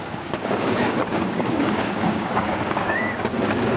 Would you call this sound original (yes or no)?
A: no